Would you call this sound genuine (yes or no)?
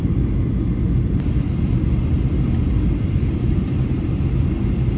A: yes